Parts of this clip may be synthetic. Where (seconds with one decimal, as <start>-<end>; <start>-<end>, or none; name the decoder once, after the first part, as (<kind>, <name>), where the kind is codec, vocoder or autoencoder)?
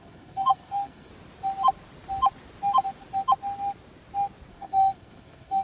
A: 0.0-1.1 (codec, SNAC); 4.5-5.6